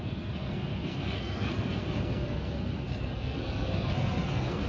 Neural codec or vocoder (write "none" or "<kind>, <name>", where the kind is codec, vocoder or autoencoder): codec, SNAC